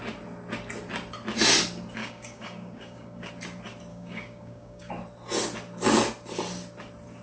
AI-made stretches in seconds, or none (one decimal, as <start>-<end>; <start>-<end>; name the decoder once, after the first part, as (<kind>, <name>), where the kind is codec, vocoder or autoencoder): 2.0-3.3 (codec, DAC); 3.9-4.9